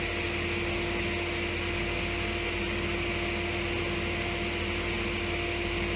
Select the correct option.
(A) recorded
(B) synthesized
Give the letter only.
A